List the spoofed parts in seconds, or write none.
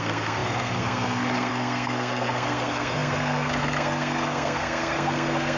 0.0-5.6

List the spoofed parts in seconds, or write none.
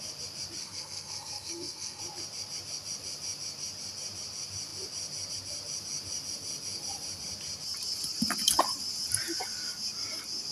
0.6-2.0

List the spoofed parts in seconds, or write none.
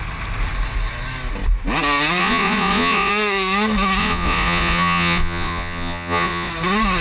2.2-3.1; 4.0-6.5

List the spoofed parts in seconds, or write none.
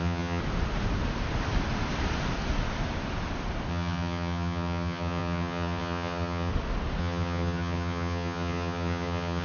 0.0-0.4; 3.7-6.5; 7.0-9.4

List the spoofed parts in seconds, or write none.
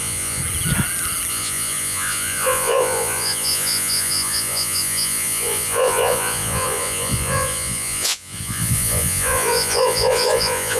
0.0-0.4; 1.3-10.8